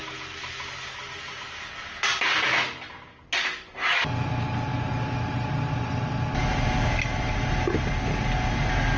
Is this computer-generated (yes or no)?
no